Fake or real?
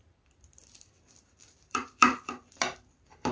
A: fake